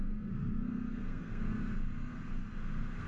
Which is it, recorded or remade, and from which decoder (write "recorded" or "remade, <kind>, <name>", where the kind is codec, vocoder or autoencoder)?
remade, codec, SNAC